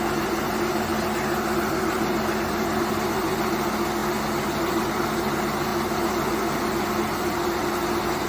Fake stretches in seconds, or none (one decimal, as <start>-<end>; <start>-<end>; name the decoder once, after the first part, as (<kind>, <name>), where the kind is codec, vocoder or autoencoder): none